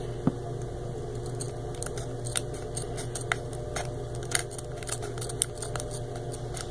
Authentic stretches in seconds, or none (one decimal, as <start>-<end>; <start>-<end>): 0.0-6.7